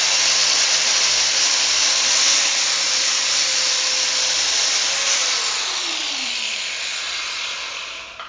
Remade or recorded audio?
remade